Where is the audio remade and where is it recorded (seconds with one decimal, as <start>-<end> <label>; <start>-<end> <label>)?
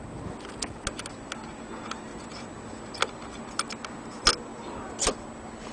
0.0-5.7 recorded